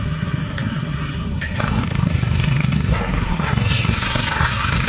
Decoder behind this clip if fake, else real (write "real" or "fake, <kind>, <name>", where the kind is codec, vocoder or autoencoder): fake, codec, SNAC